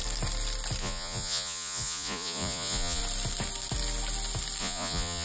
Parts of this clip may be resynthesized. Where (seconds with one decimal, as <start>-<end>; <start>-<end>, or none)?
0.8-3.0; 4.6-5.2